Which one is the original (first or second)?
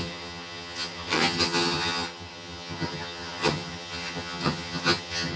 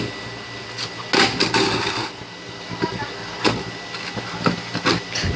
second